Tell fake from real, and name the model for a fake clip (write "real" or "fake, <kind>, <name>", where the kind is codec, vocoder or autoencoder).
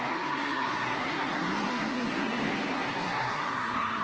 fake, codec, SNAC